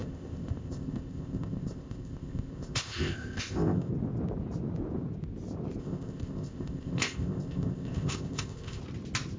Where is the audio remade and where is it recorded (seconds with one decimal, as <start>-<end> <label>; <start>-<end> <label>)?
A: 0.0-3.9 remade; 3.9-5.8 recorded; 5.8-8.8 remade; 8.8-9.4 recorded